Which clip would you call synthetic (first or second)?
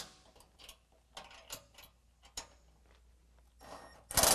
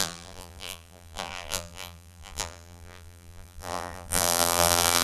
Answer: second